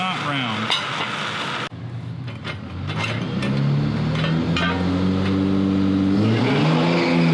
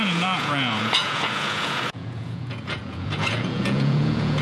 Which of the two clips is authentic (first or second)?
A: first